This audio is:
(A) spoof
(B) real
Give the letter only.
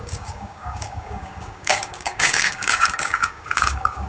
A